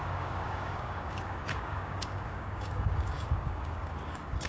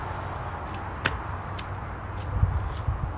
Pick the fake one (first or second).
first